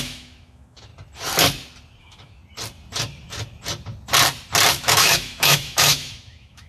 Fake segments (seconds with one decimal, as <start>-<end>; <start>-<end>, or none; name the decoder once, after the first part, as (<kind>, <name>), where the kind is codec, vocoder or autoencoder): 0.0-0.9 (autoencoder, DAC-VAE); 2.0-2.4; 4.7-6.7